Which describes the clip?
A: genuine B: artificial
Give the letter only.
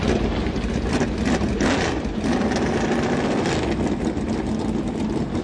A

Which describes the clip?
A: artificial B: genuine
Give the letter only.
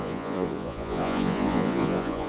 A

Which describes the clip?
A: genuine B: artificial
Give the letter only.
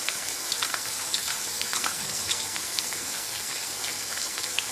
B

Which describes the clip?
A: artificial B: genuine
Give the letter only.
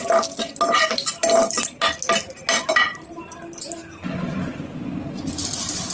B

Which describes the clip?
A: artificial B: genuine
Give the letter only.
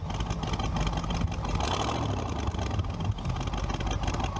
B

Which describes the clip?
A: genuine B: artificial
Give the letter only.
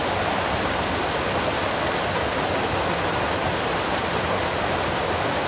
A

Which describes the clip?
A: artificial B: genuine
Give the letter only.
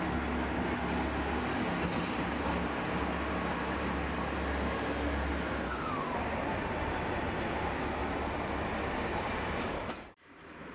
B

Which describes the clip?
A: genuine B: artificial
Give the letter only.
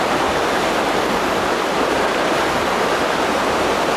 A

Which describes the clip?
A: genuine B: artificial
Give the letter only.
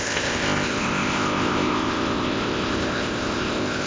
B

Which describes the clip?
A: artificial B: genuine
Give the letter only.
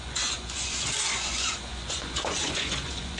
A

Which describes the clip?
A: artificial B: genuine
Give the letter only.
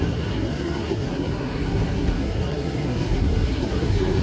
A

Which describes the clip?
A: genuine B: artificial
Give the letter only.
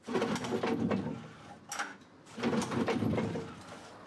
A